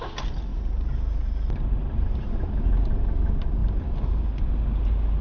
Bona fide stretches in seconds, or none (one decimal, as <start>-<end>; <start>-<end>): 0.0-0.5; 2.6-3.6; 4.2-5.2

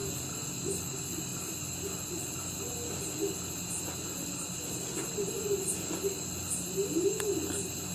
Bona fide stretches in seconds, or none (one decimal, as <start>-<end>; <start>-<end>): 0.0-7.9

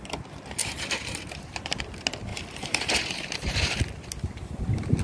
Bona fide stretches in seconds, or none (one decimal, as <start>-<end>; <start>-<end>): 0.0-0.6; 1.8-2.3; 3.8-5.0

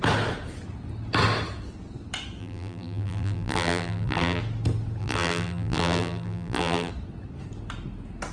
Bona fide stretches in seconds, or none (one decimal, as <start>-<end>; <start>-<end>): 0.0-2.4; 4.4-5.0; 6.9-8.3